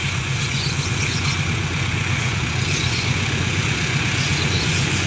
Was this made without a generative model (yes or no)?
no